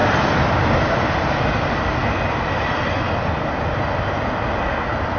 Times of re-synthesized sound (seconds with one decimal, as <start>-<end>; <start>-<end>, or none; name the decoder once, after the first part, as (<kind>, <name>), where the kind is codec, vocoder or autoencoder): none